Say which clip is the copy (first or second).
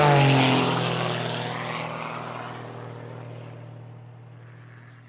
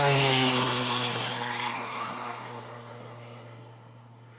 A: second